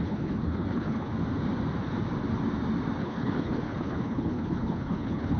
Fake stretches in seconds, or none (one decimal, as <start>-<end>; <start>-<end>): 0.0-1.1; 3.0-5.4